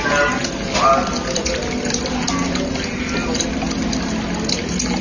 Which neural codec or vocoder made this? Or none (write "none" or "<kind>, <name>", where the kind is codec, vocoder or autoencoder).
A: none